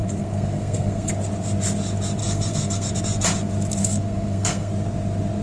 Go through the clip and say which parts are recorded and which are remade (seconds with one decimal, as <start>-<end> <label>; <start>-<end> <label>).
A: 0.0-1.1 remade; 1.1-2.2 recorded; 2.2-2.9 remade; 2.9-3.8 recorded; 3.8-4.7 remade; 4.7-5.4 recorded